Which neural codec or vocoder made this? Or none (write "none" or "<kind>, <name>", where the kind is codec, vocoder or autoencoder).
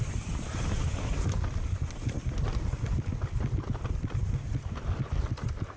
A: none